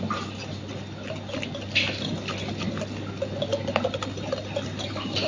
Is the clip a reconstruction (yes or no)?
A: yes